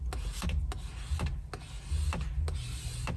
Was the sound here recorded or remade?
recorded